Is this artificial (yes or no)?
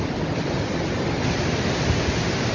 no